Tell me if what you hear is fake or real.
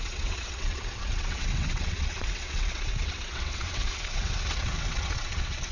fake